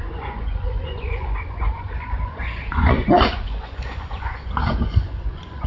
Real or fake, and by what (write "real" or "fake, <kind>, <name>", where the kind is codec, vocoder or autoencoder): fake, vocoder, Vocos